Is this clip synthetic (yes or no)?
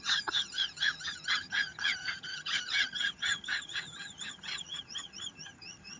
yes